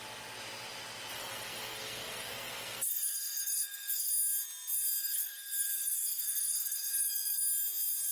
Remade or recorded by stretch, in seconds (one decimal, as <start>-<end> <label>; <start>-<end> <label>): 0.0-1.1 recorded; 1.1-4.1 remade; 4.1-5.0 recorded; 5.0-7.4 remade; 7.4-8.1 recorded